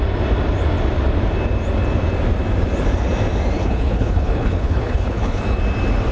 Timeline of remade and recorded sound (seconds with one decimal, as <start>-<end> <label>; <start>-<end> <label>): 0.0-3.6 recorded; 3.6-5.4 remade; 5.4-6.1 recorded